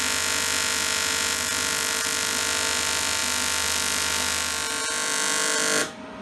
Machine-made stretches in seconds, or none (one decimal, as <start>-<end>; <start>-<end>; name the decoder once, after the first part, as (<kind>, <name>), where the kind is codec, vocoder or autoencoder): none